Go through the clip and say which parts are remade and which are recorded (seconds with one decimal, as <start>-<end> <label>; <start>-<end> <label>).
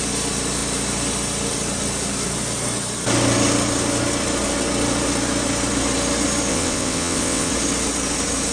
0.0-6.5 recorded; 6.5-7.5 remade; 7.5-8.5 recorded